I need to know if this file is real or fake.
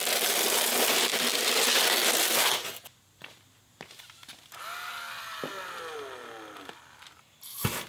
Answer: real